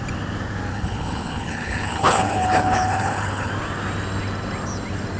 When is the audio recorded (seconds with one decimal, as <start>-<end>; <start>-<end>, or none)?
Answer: 0.0-0.7; 3.5-5.2